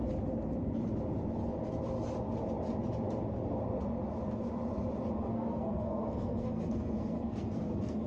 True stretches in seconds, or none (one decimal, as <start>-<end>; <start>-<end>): 0.0-5.3